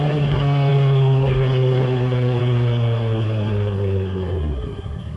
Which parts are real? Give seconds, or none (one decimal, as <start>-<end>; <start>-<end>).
none

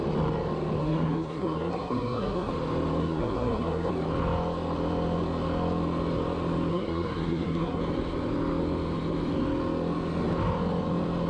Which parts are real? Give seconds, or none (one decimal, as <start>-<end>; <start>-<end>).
0.0-0.8; 2.5-3.0; 3.9-6.7; 7.8-11.3